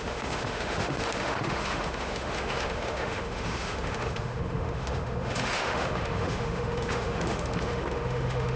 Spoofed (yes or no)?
yes